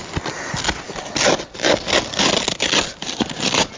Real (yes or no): yes